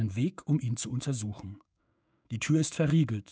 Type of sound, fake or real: fake